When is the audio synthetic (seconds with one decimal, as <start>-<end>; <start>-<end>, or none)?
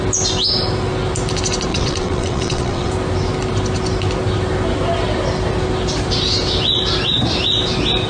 1.7-2.9